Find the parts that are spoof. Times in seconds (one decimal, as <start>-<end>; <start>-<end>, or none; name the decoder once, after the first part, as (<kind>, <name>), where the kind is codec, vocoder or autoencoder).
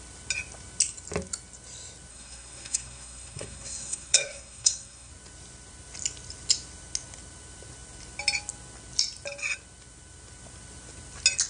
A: 2.1-5.1 (codec, SNAC)